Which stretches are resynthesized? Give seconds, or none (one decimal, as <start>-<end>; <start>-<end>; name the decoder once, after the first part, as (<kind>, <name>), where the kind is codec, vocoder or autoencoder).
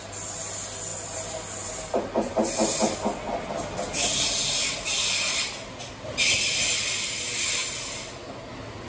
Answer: none